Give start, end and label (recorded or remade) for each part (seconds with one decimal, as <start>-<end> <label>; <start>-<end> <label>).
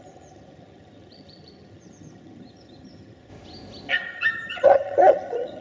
0.0-3.3 remade; 3.3-3.9 recorded; 3.9-5.6 remade